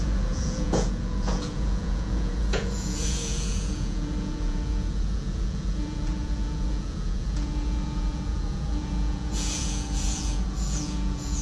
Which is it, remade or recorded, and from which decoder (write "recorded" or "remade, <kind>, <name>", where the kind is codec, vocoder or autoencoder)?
remade, vocoder, Vocos